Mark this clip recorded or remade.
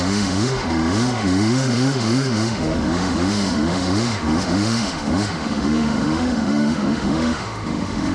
remade